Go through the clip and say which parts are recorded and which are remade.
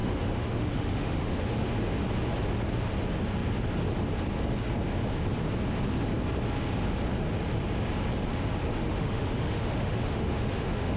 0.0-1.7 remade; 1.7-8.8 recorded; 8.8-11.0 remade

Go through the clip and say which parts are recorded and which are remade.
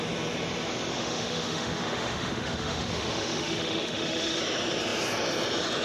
0.0-0.9 recorded; 0.9-4.4 remade; 4.4-5.8 recorded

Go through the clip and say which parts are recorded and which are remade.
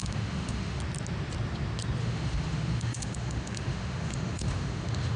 0.0-0.8 remade; 0.8-2.0 recorded; 2.0-5.2 remade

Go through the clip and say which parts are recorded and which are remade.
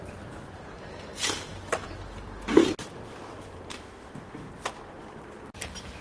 0.0-3.7 recorded; 3.7-4.5 remade; 4.5-6.0 recorded